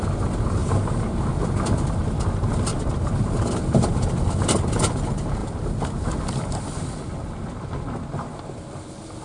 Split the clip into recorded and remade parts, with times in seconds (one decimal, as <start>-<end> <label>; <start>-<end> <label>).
0.0-0.6 recorded; 0.6-1.3 remade; 1.3-9.2 recorded